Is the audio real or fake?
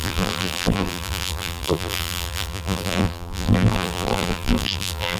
fake